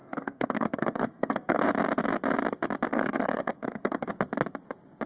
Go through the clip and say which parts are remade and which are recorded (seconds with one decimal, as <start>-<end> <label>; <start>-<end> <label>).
0.0-1.6 remade; 1.6-2.9 recorded; 2.9-4.1 remade; 4.1-5.1 recorded